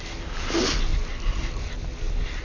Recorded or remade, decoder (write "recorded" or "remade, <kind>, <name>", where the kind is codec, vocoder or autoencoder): recorded